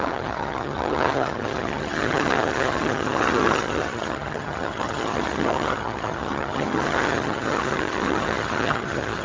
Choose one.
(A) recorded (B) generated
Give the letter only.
B